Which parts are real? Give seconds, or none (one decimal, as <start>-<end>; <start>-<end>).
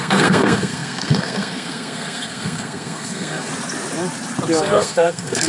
3.5-4.6